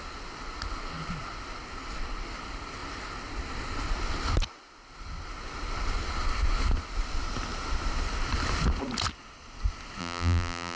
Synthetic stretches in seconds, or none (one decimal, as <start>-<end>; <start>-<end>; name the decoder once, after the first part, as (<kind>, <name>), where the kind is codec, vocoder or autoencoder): 10.0-10.8 (vocoder, BigVGAN v2)